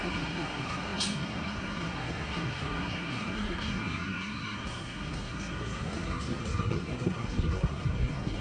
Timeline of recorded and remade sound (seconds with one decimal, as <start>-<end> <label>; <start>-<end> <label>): 0.0-8.4 remade